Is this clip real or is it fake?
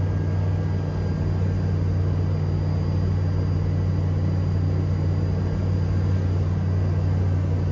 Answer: real